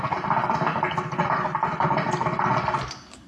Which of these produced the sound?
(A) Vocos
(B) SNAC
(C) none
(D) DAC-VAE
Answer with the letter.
C